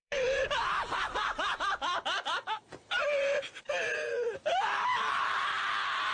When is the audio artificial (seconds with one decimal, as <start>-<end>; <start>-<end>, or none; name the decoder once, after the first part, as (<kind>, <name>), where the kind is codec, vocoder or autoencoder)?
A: 0.0-3.6 (vocoder, BigVGAN v2); 4.5-5.6